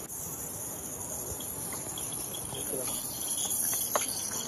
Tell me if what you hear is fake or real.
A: real